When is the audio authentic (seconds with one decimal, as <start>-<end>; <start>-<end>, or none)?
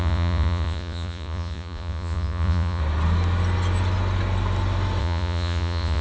2.8-5.0